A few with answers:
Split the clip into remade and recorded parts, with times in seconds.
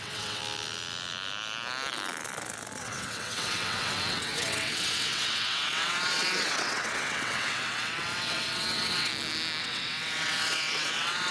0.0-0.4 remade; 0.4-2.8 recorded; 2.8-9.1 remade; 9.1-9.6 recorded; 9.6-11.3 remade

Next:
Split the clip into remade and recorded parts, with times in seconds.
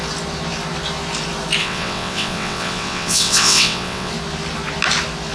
0.0-1.6 recorded; 1.6-4.1 remade; 4.1-5.3 recorded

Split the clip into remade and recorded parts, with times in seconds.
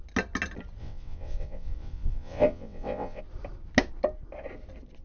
0.0-0.8 recorded; 0.8-3.2 remade; 3.2-5.0 recorded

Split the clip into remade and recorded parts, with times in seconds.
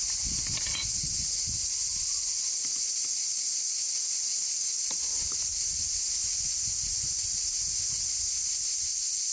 0.0-9.3 recorded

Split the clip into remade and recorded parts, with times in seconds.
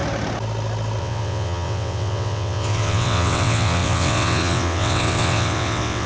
0.0-1.0 recorded; 1.0-6.1 remade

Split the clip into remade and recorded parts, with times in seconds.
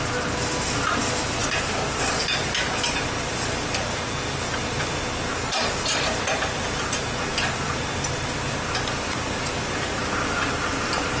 0.0-11.2 recorded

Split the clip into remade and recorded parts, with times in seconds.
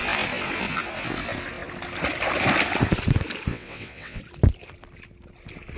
0.0-3.5 recorded; 3.5-4.2 remade; 4.2-5.8 recorded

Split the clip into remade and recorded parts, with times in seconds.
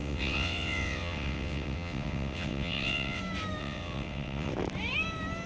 0.0-3.2 remade; 3.2-3.6 recorded; 3.6-4.5 remade; 4.5-5.5 recorded